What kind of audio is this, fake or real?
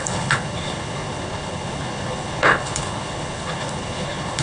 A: fake